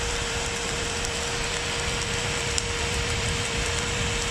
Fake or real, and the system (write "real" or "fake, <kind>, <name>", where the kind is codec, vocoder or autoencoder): fake, vocoder, BigVGAN v2